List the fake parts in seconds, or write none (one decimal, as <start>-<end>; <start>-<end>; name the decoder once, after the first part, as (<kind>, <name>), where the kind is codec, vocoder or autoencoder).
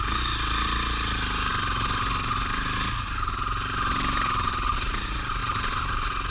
none